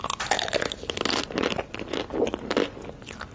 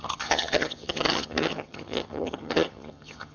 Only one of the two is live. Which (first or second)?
first